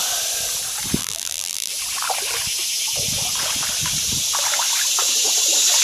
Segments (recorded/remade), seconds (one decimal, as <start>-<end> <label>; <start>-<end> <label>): 0.0-1.0 recorded; 1.0-1.7 remade; 1.7-5.8 recorded